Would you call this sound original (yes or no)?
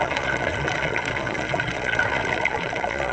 no